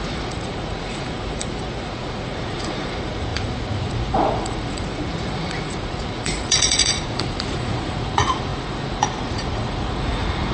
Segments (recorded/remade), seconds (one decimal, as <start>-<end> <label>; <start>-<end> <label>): 0.0-10.5 remade